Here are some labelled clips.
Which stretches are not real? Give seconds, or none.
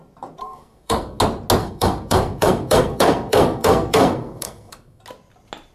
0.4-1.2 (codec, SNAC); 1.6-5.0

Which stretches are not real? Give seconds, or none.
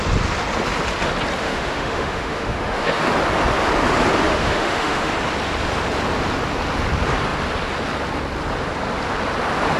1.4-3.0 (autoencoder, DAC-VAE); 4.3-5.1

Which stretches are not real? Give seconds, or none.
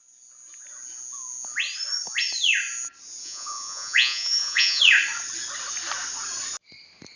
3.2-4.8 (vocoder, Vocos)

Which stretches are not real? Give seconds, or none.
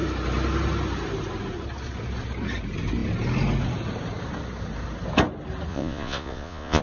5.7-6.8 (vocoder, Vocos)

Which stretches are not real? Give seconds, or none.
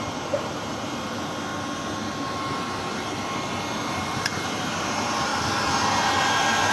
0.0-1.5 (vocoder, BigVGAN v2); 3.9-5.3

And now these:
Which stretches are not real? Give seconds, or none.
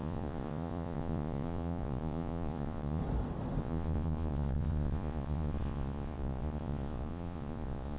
0.0-3.0 (vocoder, Vocos); 3.6-8.0